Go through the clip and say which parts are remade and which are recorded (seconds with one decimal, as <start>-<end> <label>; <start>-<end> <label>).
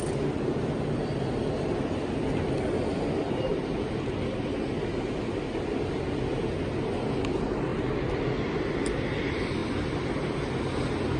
0.0-11.2 recorded